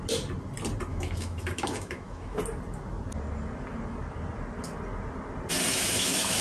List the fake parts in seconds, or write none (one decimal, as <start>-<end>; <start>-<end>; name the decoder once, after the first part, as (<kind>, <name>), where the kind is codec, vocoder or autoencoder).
0.9-2.4 (autoencoder, DAC-VAE); 5.7-6.4